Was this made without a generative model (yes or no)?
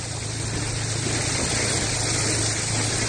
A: yes